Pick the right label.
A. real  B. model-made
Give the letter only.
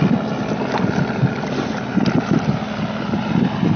A